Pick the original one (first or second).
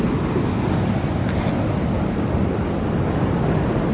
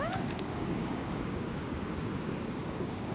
first